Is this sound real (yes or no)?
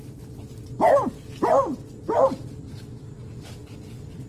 yes